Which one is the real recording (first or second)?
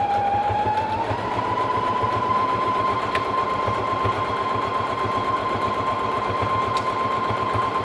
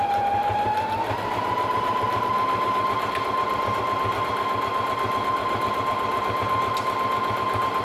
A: second